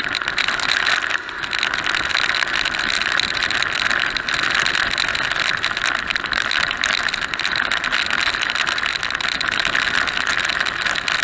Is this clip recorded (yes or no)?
yes